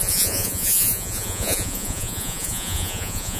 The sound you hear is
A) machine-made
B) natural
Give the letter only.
A